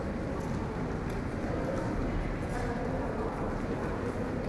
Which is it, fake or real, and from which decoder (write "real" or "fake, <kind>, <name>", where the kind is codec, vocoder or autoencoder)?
real